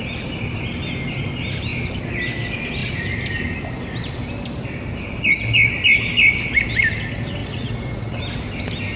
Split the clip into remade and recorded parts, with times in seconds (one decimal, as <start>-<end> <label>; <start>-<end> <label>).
0.0-7.4 recorded; 7.4-8.2 remade; 8.2-9.0 recorded